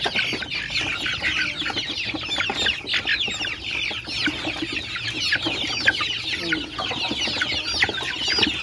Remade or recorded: recorded